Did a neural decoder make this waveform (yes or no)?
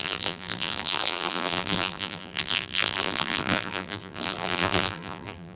yes